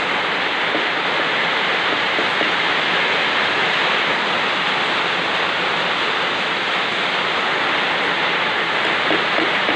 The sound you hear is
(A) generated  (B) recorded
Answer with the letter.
B